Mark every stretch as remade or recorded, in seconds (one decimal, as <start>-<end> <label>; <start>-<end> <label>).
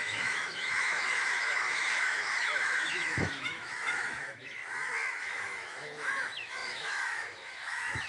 0.0-4.6 remade; 4.6-5.1 recorded; 5.1-8.1 remade